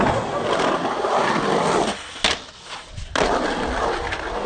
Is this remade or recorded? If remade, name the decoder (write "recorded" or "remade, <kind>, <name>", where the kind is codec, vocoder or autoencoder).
recorded